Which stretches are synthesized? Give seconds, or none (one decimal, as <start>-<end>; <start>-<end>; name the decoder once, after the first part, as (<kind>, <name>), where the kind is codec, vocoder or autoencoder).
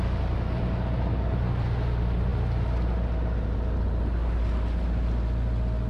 none